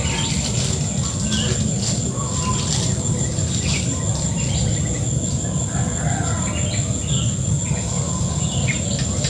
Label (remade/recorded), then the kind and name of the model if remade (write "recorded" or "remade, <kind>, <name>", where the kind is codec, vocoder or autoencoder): recorded